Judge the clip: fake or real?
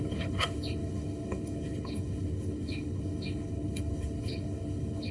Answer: fake